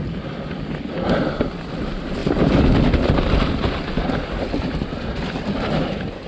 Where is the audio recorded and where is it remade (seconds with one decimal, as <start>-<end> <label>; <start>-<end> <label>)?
0.0-6.3 recorded

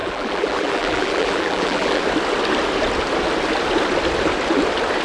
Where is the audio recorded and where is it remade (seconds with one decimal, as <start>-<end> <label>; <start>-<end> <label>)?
0.0-2.0 remade; 2.0-5.0 recorded

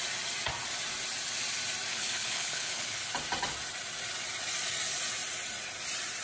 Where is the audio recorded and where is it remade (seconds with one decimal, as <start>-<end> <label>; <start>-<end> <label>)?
0.0-1.9 recorded; 1.9-3.1 remade; 3.1-6.2 recorded

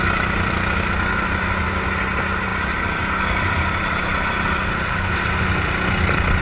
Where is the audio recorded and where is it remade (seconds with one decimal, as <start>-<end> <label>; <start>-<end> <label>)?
0.0-6.4 recorded